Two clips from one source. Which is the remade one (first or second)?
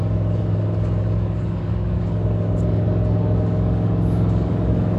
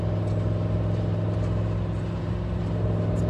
first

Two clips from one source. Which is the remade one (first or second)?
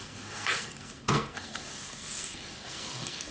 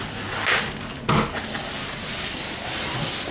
first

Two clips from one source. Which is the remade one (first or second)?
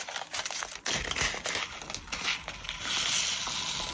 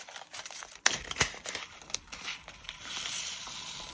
second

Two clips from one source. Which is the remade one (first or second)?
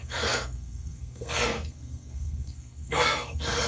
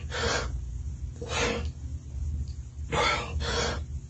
first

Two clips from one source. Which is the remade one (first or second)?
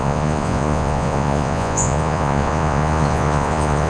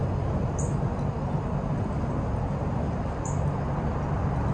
first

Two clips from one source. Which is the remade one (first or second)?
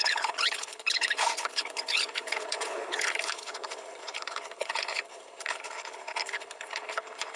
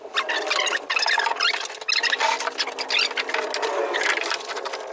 first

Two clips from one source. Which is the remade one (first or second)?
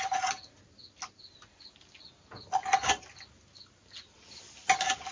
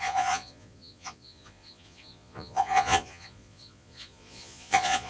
second